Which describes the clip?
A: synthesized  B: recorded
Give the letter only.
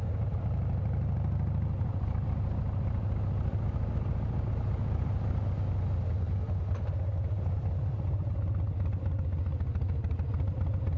B